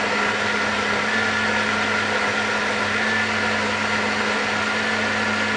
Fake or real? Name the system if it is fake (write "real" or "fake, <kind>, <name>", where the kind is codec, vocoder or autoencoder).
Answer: real